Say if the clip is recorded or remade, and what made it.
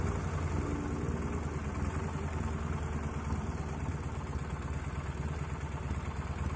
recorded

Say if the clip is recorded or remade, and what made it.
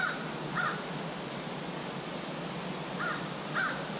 recorded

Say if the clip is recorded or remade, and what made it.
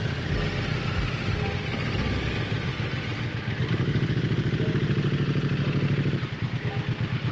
recorded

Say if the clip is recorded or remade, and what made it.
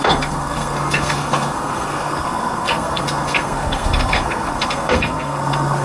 remade, codec, SNAC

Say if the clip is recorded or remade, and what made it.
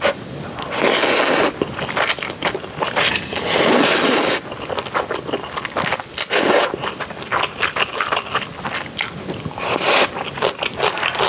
recorded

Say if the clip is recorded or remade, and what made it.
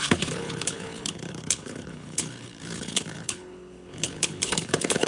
remade, codec, HILCodec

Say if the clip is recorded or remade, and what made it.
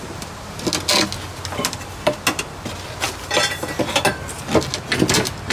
recorded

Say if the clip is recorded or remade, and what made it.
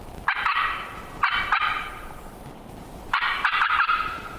remade, vocoder, BigVGAN v2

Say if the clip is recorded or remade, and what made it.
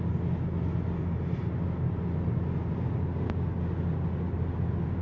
recorded